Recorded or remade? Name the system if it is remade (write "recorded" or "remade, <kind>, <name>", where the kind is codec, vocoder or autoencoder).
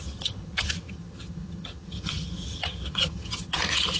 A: remade, vocoder, HiFi-GAN